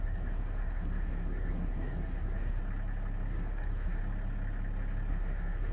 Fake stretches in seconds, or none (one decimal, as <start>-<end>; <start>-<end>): 0.0-2.6; 3.3-4.0; 5.1-5.7